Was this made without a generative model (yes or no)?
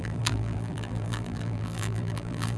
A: no